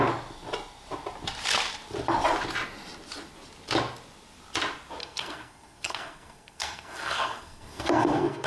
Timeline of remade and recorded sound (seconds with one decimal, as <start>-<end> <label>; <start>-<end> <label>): 0.0-5.0 recorded; 5.0-8.5 remade